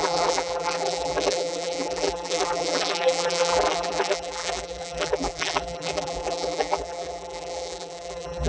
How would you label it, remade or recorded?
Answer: remade